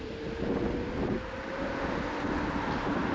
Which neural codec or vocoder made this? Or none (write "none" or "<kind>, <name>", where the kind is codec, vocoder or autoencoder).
none